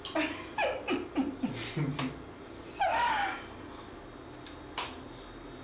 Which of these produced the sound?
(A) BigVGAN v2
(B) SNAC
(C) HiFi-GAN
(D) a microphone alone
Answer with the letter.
D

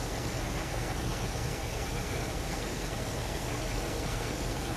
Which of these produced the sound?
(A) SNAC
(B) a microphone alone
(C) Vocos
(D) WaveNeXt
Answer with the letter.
A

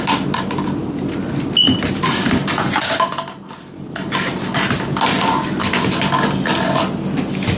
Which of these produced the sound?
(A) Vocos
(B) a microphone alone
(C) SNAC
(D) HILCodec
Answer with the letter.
B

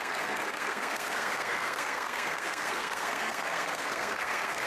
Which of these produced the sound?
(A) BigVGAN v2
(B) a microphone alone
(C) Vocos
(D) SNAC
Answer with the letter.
D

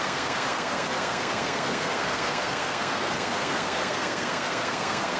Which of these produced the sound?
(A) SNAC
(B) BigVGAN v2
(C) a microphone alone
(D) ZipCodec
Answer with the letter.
A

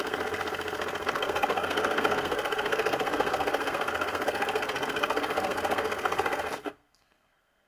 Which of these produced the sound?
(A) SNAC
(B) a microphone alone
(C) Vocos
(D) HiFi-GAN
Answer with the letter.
A